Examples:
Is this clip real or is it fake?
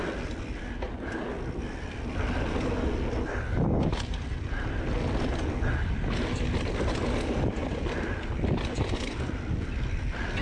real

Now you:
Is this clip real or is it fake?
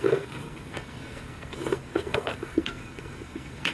fake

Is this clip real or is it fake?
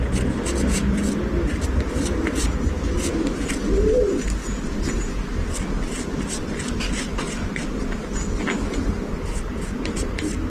real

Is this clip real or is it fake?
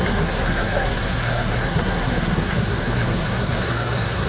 fake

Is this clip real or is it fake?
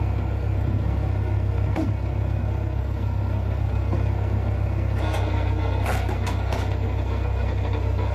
fake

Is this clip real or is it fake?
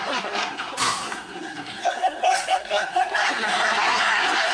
fake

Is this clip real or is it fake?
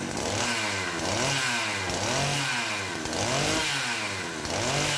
real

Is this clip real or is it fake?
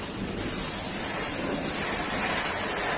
real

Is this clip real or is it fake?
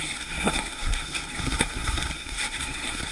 fake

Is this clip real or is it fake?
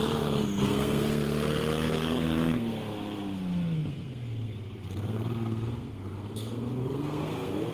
fake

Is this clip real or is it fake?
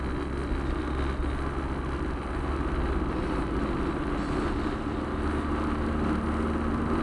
real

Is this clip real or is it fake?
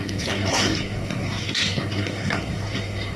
fake